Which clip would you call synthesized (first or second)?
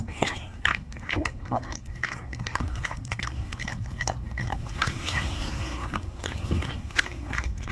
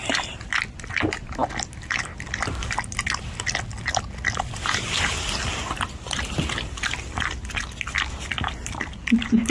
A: first